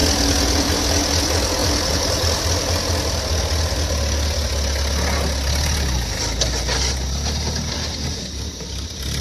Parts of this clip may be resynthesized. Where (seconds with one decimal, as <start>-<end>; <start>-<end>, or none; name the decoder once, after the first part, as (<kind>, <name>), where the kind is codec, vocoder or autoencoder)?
1.6-2.4 (vocoder, BigVGAN v2)